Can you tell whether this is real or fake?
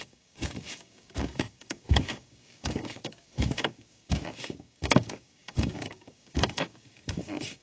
fake